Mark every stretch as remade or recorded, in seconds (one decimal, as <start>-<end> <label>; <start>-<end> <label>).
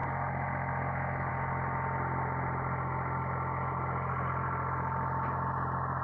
0.0-6.0 recorded